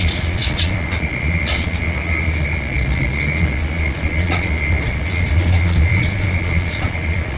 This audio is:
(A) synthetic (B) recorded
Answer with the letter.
A